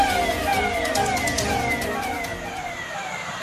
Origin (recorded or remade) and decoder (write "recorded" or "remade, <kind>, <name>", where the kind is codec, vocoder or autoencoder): recorded